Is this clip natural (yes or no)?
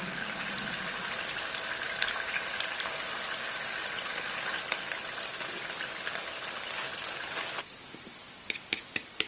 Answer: yes